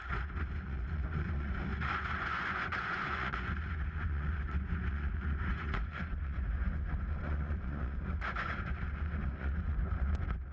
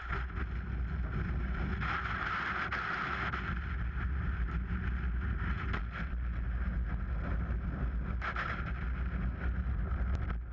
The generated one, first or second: first